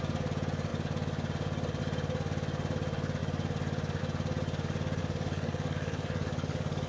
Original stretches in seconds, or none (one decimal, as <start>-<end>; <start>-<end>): 0.0-5.0